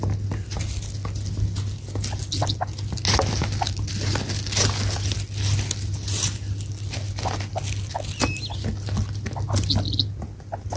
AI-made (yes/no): no